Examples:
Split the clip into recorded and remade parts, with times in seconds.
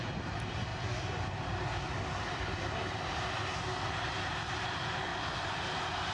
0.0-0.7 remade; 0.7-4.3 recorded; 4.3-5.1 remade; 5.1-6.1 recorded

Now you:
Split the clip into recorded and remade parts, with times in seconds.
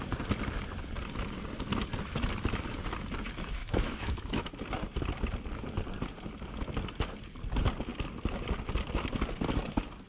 0.0-3.6 recorded; 3.6-4.5 remade; 4.5-10.1 recorded